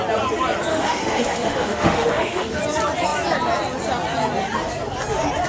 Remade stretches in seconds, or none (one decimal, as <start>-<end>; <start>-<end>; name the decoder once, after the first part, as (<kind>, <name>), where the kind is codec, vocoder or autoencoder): 0.7-2.6 (autoencoder, DAC-VAE)